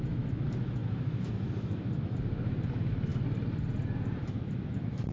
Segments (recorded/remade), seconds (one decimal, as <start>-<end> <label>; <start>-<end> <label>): 0.0-3.1 remade; 3.1-4.2 recorded; 4.2-5.1 remade